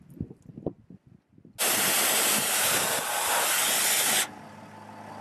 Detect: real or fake real